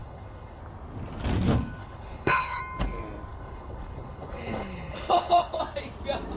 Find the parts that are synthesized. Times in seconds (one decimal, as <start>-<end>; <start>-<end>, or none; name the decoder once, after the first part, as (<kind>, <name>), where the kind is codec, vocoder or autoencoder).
0.0-0.6 (codec, HILCodec); 1.8-2.6; 3.3-5.6